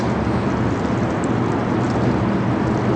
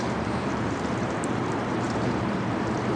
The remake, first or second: second